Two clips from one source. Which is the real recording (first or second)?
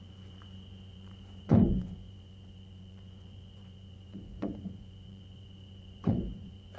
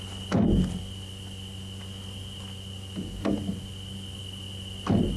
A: second